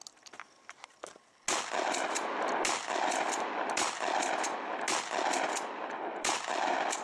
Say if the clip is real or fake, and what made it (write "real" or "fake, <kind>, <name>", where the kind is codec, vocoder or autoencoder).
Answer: real